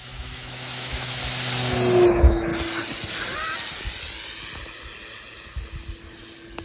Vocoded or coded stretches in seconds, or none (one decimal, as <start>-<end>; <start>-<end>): 0.0-1.2; 2.1-2.5